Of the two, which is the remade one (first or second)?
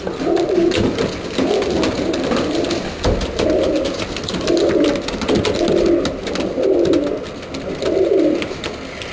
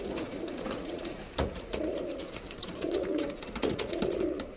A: second